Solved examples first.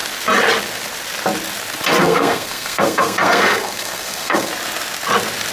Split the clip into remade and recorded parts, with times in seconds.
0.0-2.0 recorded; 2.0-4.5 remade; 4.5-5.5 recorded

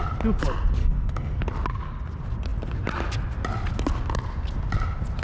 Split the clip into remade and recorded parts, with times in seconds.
0.0-0.8 recorded; 0.8-1.4 remade; 1.4-5.2 recorded

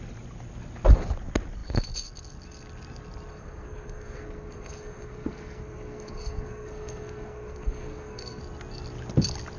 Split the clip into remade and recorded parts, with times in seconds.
0.0-3.3 recorded; 3.3-8.4 remade; 8.4-9.6 recorded

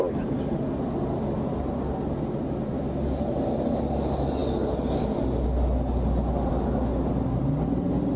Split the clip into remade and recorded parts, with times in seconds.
0.0-8.2 recorded

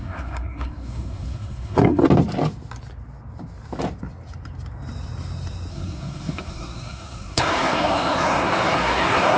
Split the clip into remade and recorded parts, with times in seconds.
0.0-2.0 remade; 2.0-5.7 recorded; 5.7-9.4 remade

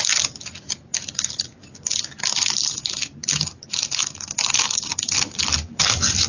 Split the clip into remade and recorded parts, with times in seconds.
0.0-6.3 recorded